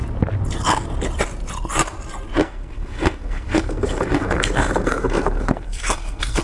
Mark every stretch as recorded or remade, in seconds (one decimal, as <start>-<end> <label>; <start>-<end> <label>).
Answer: 0.0-2.4 recorded; 2.4-6.4 remade